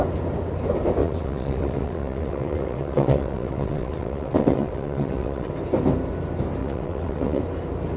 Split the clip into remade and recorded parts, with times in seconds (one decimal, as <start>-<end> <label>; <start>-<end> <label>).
0.0-1.0 recorded; 1.0-5.5 remade; 5.5-6.6 recorded; 6.6-7.4 remade; 7.4-8.0 recorded